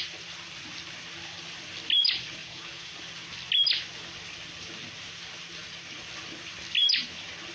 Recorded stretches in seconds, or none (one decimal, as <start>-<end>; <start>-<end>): 0.0-2.4; 3.0-7.5